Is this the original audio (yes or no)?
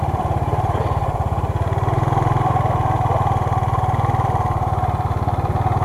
no